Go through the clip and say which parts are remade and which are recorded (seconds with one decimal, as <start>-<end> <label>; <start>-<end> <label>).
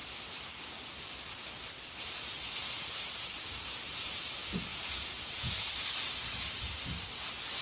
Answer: 0.0-4.7 recorded; 4.7-5.5 remade; 5.5-7.6 recorded